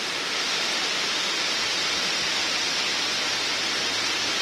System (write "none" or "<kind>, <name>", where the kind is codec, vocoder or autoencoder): none